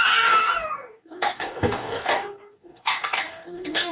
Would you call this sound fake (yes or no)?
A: yes